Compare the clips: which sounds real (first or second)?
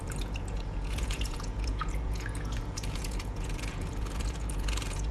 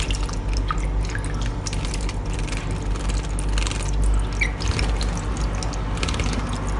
second